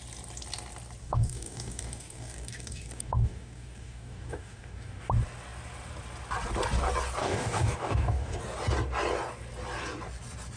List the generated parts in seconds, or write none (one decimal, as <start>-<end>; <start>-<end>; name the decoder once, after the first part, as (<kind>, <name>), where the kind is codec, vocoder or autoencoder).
1.0-5.1 (codec, DAC); 7.2-8.4